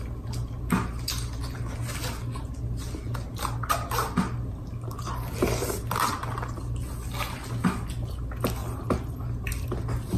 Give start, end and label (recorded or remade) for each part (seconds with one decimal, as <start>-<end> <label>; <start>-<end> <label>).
0.0-8.6 recorded; 8.6-9.5 remade; 9.5-10.2 recorded